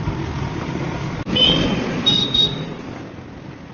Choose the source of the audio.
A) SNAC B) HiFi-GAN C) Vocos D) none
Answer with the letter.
D